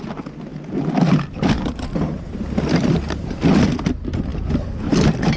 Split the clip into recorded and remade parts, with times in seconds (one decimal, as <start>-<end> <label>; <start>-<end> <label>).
0.0-4.3 recorded; 4.3-5.4 remade